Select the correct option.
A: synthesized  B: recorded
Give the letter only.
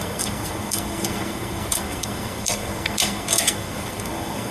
A